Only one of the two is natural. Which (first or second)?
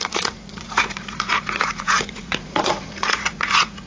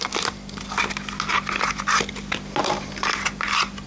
second